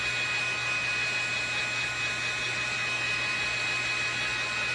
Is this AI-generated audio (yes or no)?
no